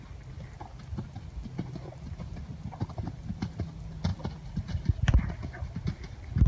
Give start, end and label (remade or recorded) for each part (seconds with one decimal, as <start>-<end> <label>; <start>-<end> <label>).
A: 0.0-4.1 recorded; 4.1-5.3 remade; 5.3-6.5 recorded